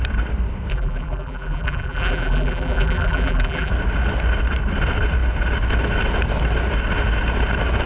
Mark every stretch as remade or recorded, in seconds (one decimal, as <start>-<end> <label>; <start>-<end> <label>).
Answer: 0.0-0.7 recorded; 0.7-3.7 remade; 3.7-7.9 recorded